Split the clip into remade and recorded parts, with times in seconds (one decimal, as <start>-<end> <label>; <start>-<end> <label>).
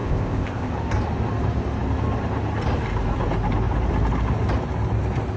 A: 0.0-0.7 remade; 0.7-5.4 recorded